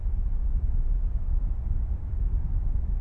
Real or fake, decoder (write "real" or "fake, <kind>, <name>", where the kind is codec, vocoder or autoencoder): fake, vocoder, Vocos